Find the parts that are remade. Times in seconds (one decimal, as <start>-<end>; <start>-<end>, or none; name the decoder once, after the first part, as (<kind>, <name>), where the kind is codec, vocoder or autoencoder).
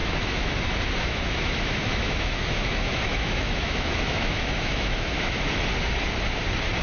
0.0-0.5 (autoencoder, DAC-VAE); 1.0-5.1